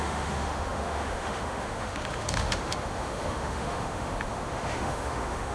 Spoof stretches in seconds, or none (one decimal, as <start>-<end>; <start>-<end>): 0.0-5.5